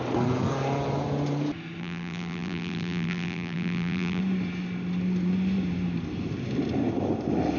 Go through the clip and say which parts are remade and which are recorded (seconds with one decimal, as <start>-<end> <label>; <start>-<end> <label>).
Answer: 0.0-1.8 recorded; 1.8-4.2 remade; 4.2-7.6 recorded